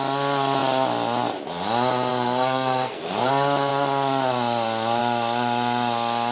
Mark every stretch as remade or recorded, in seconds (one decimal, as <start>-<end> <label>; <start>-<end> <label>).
0.0-2.1 recorded; 2.1-3.3 remade; 3.3-6.3 recorded